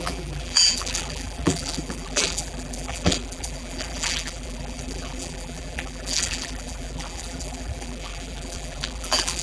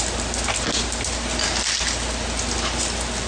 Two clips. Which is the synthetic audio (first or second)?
first